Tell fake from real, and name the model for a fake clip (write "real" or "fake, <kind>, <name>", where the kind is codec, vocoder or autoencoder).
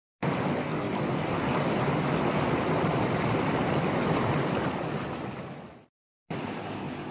real